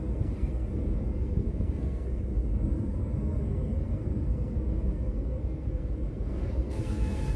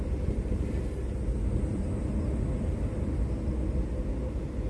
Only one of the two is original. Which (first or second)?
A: second